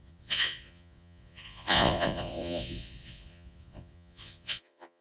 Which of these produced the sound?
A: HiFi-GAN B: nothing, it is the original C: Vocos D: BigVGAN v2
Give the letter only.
C